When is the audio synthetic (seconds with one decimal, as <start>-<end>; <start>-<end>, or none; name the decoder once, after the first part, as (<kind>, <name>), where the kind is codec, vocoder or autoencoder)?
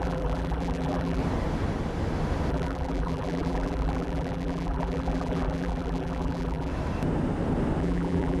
0.0-1.2 (vocoder, BigVGAN v2); 2.5-6.7; 7.8-8.4